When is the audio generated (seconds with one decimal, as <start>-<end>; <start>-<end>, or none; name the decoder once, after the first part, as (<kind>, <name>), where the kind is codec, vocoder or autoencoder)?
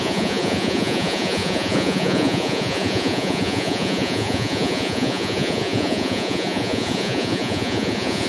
0.0-8.3 (vocoder, Vocos)